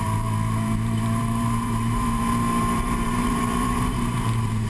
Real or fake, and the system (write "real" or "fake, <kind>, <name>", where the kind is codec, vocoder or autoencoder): fake, vocoder, BigVGAN v2